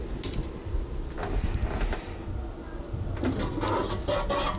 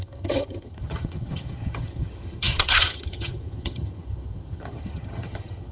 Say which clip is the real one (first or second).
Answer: first